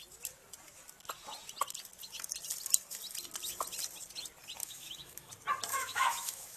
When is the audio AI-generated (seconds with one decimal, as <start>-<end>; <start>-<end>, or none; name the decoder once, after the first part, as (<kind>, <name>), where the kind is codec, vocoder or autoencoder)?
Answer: 4.6-5.3 (autoencoder, DAC-VAE); 5.7-6.6